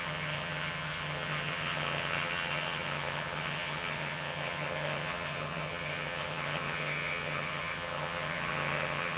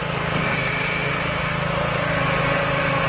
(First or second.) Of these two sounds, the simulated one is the first